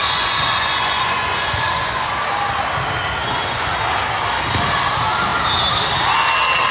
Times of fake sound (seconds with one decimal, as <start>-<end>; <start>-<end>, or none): 0.0-2.1; 3.2-3.7